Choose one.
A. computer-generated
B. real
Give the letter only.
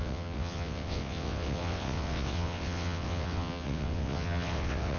A